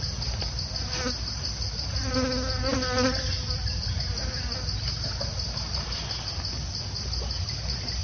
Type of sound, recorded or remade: recorded